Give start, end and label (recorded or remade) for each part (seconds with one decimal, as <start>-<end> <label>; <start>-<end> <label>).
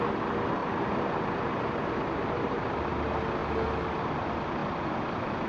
0.0-0.6 recorded; 0.6-2.7 remade; 2.7-5.5 recorded